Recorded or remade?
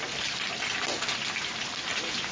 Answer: recorded